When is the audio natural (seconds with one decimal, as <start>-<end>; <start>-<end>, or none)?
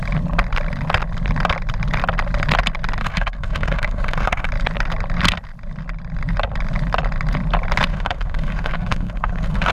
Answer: 0.0-3.0; 4.5-7.9